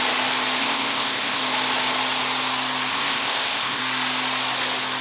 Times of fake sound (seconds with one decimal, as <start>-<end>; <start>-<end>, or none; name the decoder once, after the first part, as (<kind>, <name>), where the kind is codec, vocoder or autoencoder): 0.6-1.4 (codec, ZipCodec); 2.9-3.8

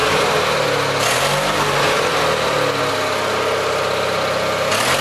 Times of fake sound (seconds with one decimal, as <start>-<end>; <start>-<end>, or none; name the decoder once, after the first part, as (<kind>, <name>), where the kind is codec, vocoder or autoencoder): none